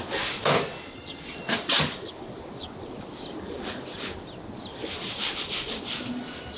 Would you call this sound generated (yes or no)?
no